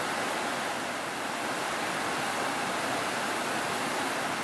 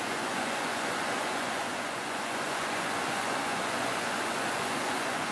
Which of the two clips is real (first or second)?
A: first